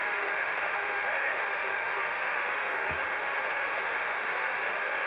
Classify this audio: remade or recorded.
remade